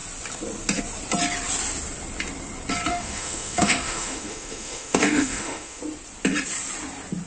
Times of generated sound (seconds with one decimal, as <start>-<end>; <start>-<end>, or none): 2.9-5.8

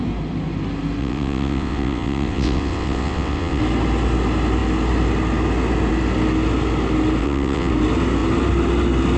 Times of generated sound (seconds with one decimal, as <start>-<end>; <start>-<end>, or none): 1.0-3.6; 7.2-7.7

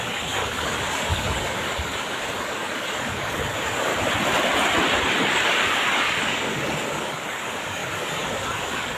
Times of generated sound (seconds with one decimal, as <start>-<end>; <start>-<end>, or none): 0.0-3.9; 5.2-9.0

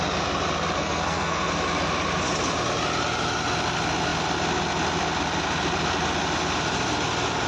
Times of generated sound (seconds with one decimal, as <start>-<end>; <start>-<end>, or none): 0.8-1.5

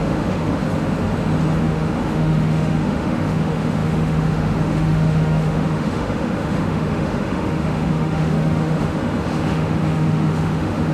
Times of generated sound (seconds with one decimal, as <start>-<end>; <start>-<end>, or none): 0.0-0.6; 1.6-10.9